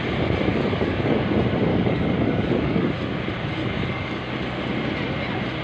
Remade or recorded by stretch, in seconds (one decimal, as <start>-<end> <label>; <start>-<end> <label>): 0.0-0.5 recorded; 0.5-1.2 remade; 1.2-1.7 recorded; 1.7-2.9 remade; 2.9-3.6 recorded; 3.6-4.3 remade; 4.3-5.6 recorded